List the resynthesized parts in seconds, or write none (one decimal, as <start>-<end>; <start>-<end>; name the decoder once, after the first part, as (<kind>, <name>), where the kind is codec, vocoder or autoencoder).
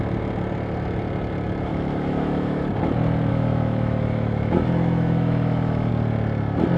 1.7-2.6 (autoencoder, DAC-VAE); 3.3-5.9